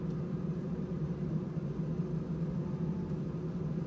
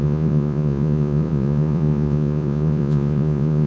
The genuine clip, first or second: first